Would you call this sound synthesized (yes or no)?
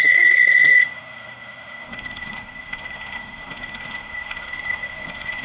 yes